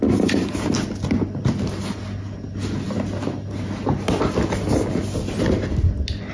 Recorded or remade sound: recorded